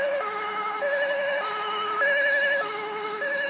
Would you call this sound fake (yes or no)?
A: yes